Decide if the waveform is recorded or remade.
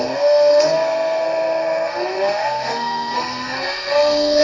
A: remade